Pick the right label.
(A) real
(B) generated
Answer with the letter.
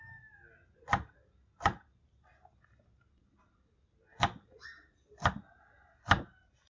A